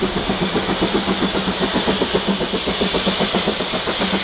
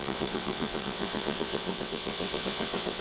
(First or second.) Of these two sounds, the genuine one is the first